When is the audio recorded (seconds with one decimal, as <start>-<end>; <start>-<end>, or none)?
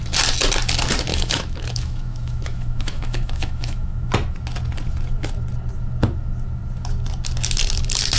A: 0.0-1.1; 4.1-8.2